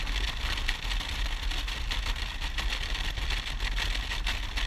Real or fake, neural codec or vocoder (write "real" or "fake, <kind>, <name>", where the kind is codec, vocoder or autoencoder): real